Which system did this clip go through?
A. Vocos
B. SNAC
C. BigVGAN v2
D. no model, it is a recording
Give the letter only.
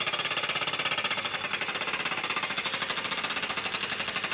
D